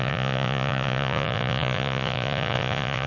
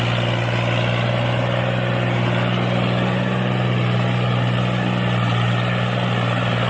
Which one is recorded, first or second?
second